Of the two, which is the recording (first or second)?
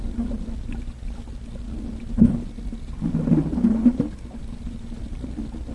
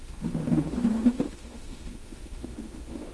first